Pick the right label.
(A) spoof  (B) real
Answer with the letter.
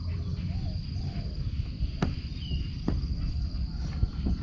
B